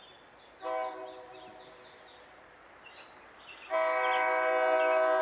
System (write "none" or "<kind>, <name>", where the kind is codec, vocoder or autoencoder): none